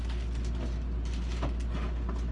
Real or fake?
real